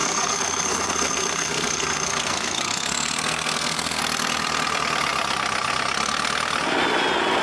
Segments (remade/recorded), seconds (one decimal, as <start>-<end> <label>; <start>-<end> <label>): 0.0-4.0 remade; 4.0-7.4 recorded